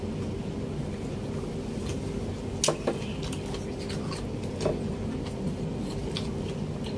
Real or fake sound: real